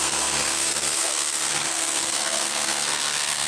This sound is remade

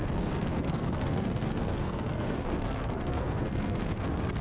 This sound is remade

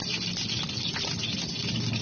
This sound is recorded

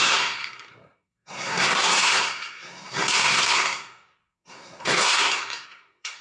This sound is remade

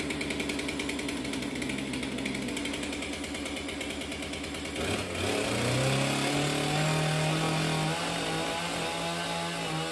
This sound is recorded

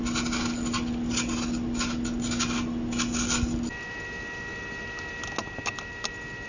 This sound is recorded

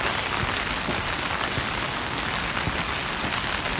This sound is recorded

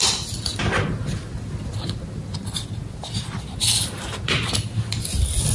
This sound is recorded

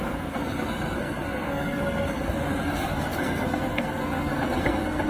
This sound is remade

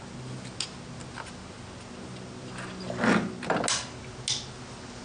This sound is recorded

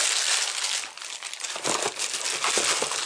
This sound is recorded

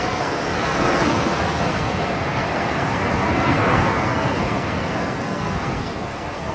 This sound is remade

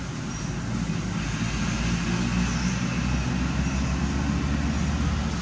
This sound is recorded